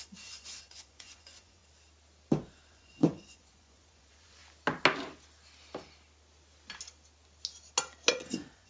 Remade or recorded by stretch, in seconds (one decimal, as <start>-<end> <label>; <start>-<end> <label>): 0.0-1.6 remade; 1.6-2.7 recorded; 2.7-4.4 remade; 4.4-8.1 recorded; 8.1-8.7 remade